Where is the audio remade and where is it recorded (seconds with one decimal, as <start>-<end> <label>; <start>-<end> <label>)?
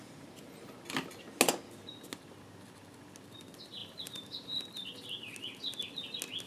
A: 0.0-3.8 recorded; 3.8-4.6 remade; 4.6-6.5 recorded